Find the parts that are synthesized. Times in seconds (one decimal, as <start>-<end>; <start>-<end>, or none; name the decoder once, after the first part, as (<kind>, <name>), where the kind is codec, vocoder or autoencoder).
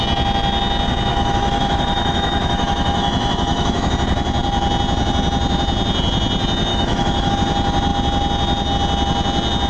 1.1-3.9 (autoencoder, DAC-VAE); 6.7-7.3